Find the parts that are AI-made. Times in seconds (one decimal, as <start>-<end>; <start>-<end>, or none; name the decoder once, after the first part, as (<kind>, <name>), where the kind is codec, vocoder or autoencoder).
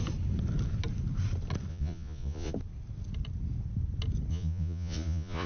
1.7-2.5 (vocoder, Vocos); 4.3-5.5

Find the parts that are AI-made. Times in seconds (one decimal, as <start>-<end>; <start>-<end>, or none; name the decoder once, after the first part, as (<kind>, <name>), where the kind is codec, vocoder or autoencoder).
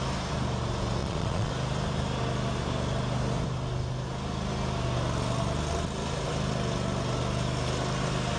1.0-1.5 (vocoder, Vocos)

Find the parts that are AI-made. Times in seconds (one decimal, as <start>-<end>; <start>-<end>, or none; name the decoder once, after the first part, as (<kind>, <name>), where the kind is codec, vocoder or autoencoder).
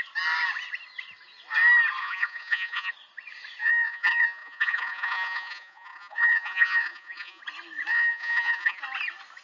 2.0-2.9 (vocoder, Vocos); 3.6-7.4; 7.9-8.8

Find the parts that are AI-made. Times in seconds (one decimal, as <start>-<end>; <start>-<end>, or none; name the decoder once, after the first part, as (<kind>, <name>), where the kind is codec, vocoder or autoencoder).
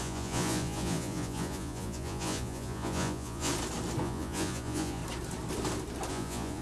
0.0-3.5 (vocoder, Vocos); 4.0-5.0; 6.1-6.6